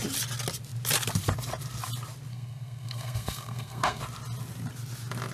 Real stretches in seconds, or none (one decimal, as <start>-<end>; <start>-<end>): 0.0-2.3; 4.0-5.3